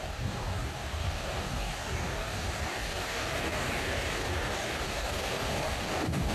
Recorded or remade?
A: remade